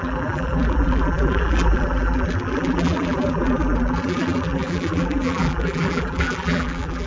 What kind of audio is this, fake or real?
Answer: fake